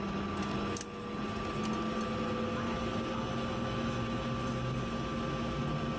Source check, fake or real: real